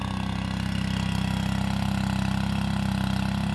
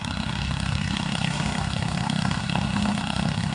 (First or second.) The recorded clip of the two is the first